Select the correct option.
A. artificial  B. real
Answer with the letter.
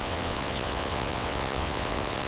A